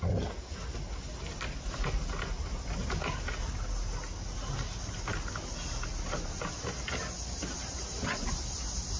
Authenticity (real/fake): real